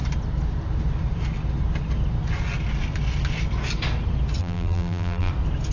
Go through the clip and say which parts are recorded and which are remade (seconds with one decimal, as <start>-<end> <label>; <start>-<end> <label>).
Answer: 0.0-4.4 recorded; 4.4-5.3 remade; 5.3-5.7 recorded